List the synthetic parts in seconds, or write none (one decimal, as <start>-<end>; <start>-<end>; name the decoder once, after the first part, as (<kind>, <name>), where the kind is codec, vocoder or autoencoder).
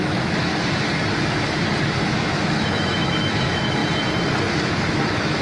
0.0-0.5 (autoencoder, DAC-VAE); 1.8-3.8; 4.6-5.4